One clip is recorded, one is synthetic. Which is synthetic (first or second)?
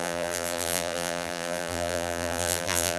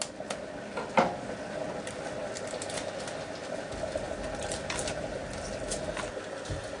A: first